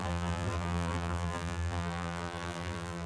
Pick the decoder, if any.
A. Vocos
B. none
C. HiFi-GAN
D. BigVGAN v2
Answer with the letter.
D